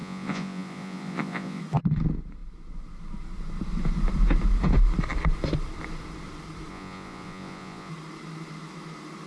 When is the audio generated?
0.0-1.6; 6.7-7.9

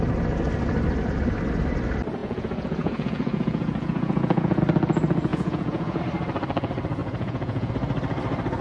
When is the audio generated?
2.2-4.6; 5.3-6.0; 7.0-7.7

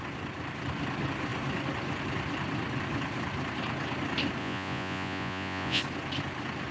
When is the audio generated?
4.4-5.8

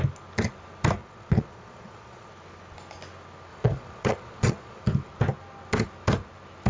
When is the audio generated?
1.0-2.3; 3.5-4.8

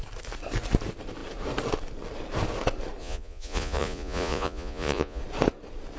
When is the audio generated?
3.0-5.2

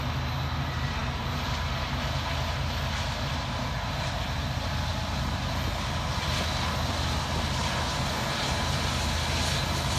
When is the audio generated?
none

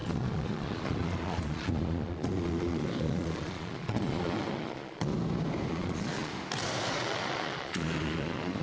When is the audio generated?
0.0-5.1; 5.7-6.3; 6.9-8.6

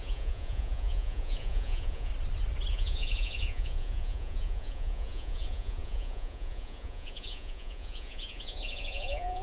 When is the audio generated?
0.0-2.1; 2.7-9.4